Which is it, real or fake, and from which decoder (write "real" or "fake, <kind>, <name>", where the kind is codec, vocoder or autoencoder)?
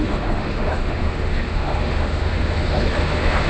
fake, autoencoder, DAC-VAE